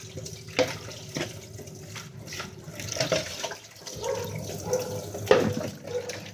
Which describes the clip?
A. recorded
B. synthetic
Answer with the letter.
A